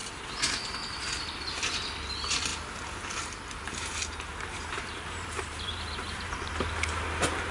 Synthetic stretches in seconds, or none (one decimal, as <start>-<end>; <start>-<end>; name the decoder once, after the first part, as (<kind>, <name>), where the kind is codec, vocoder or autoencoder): 2.5-6.5 (vocoder, BigVGAN v2)